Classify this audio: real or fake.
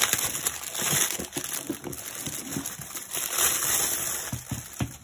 real